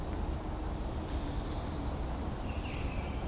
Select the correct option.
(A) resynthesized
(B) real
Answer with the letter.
B